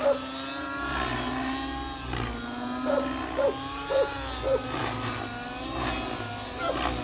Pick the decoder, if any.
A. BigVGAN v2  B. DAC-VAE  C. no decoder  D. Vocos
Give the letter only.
C